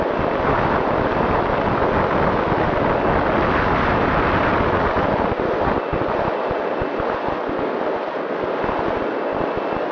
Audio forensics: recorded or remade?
recorded